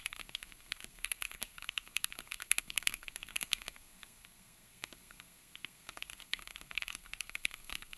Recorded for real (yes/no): no